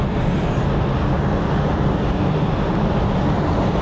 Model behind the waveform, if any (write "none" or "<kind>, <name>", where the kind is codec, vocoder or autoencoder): none